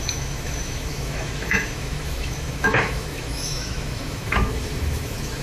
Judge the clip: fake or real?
fake